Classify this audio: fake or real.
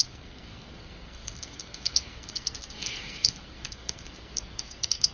fake